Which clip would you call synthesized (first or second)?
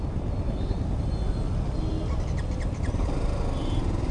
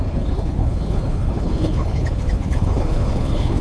second